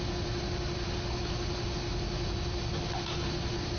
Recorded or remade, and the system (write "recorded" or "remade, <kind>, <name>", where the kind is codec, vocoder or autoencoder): recorded